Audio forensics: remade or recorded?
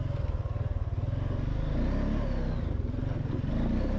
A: recorded